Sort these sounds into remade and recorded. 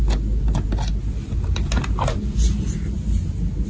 recorded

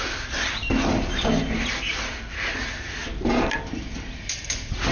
recorded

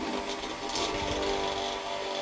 recorded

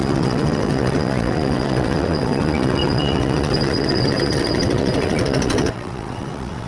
remade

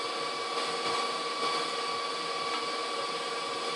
recorded